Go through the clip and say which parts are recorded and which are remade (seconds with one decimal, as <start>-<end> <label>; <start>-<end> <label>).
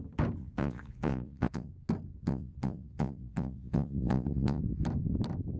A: 0.0-0.4 recorded; 0.4-1.7 remade; 1.7-2.2 recorded; 2.2-4.6 remade; 4.6-5.6 recorded